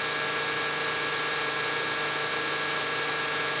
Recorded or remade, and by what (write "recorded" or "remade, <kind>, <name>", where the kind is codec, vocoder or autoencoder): recorded